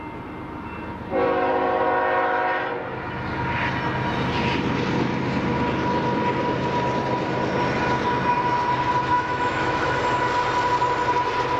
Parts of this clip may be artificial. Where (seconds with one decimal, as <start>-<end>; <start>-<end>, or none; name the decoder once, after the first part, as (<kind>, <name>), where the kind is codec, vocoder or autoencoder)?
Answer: 9.1-10.0 (autoencoder, DAC-VAE)